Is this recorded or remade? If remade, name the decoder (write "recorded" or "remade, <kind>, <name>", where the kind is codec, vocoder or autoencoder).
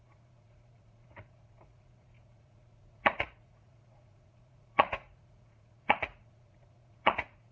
remade, vocoder, Vocos